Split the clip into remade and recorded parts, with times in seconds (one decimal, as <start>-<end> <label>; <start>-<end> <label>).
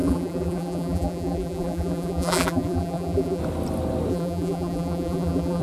0.0-3.4 remade; 3.4-4.1 recorded; 4.1-5.6 remade